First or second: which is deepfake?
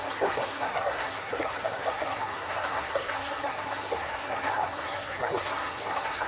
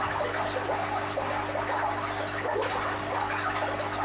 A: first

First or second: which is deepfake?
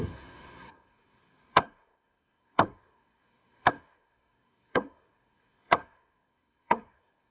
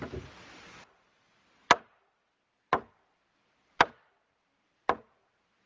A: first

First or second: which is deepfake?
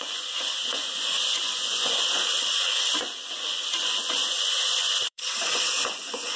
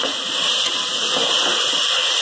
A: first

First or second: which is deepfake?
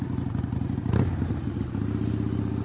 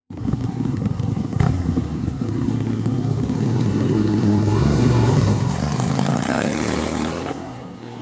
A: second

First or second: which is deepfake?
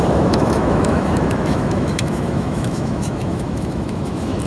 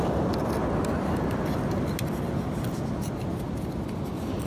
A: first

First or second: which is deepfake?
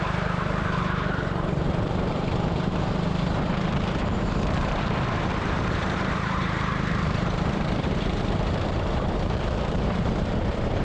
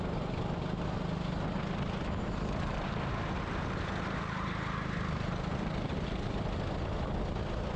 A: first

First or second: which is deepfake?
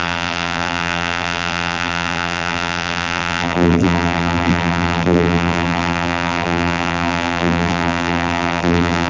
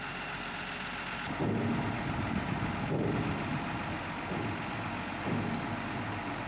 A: first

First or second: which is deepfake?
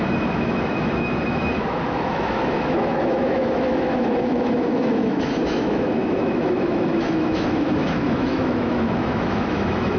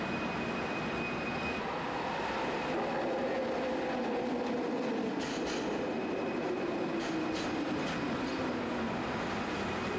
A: first